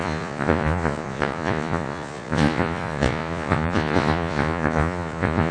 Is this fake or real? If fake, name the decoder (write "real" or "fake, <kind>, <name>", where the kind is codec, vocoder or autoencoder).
fake, vocoder, Vocos